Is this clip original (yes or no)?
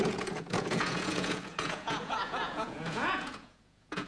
no